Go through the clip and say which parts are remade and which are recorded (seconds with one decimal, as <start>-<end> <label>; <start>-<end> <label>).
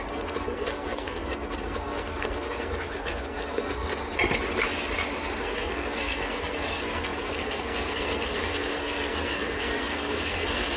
0.0-3.9 remade; 3.9-5.4 recorded; 5.4-10.8 remade